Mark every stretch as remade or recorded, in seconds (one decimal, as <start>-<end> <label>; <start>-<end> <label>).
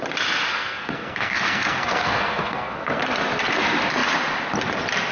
0.0-0.5 recorded; 0.5-3.0 remade; 3.0-5.1 recorded